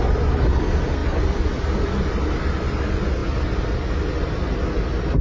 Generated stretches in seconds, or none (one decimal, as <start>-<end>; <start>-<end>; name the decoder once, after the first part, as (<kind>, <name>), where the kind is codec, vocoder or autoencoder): none